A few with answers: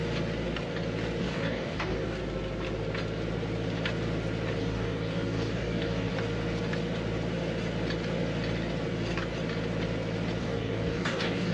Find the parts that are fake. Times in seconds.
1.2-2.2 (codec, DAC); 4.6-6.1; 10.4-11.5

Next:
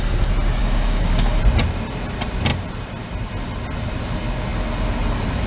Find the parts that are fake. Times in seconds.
0.6-1.4 (codec, DAC)

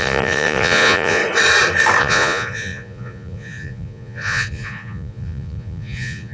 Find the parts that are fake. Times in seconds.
0.0-1.2 (vocoder, Vocos); 2.0-6.3

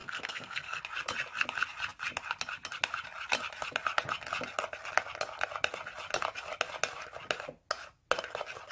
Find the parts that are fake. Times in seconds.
0.0-0.8 (codec, SNAC)

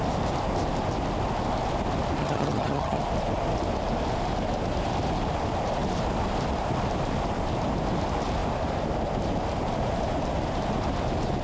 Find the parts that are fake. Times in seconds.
2.2-3.0 (vocoder, HiFi-GAN)

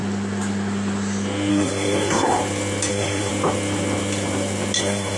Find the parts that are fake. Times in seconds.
1.5-2.4 (codec, SNAC); 2.9-3.3; 4.8-5.2